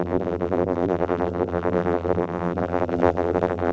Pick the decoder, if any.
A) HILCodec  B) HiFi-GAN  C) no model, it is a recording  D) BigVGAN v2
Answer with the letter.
D